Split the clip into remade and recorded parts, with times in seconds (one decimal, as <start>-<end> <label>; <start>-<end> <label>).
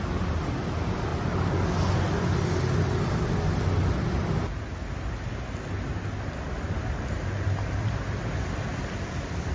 0.0-9.5 recorded